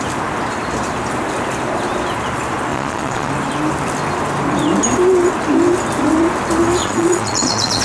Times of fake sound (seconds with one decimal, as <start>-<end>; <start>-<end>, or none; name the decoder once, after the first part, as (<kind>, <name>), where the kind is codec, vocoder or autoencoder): 2.7-3.3 (vocoder, Vocos); 6.8-7.8